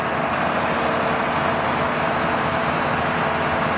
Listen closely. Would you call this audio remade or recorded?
recorded